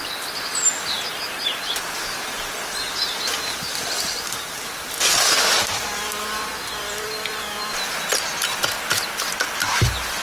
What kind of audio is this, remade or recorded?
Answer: recorded